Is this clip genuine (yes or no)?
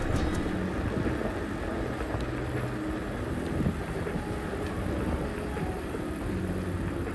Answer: yes